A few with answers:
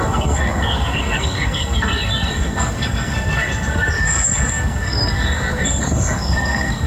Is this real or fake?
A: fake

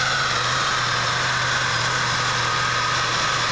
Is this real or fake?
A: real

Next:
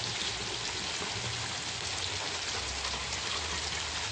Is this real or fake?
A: real